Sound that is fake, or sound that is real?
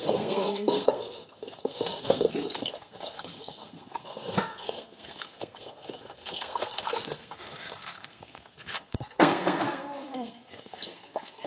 fake